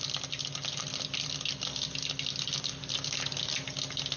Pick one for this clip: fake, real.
real